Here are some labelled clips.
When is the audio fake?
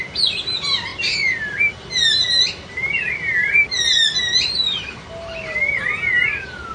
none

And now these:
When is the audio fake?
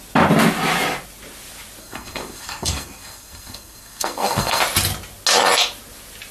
1.8-4.6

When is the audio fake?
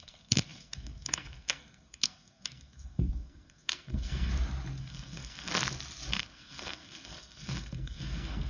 0.0-4.3; 4.8-5.5; 6.1-8.5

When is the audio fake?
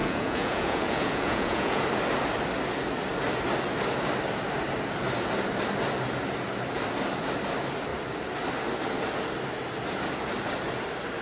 0.0-1.8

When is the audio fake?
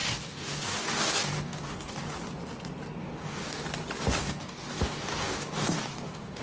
0.0-2.0; 3.0-3.6; 4.2-6.4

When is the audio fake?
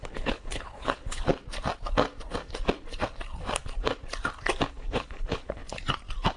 0.0-1.3; 4.7-5.6